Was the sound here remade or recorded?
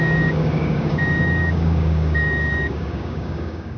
remade